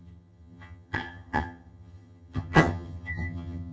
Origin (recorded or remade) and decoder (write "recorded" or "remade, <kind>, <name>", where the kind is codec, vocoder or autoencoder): remade, vocoder, HiFi-GAN